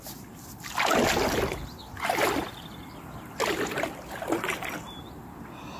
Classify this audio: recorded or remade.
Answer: recorded